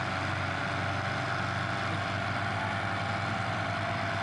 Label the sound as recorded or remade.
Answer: recorded